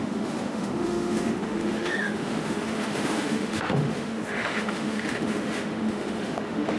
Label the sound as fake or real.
fake